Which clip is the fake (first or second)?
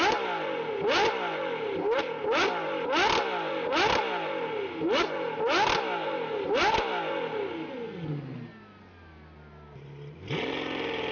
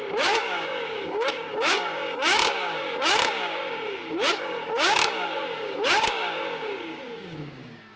second